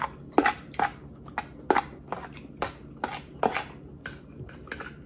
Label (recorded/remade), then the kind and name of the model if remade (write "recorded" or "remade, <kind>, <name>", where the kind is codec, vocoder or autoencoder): recorded